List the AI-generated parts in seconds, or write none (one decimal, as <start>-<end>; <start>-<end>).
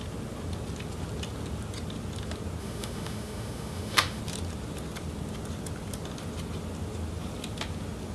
2.6-4.2